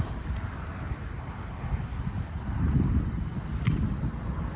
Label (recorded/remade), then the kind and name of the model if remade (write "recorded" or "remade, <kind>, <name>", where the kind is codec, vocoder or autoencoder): recorded